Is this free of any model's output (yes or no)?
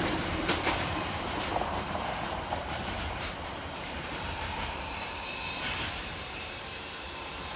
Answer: no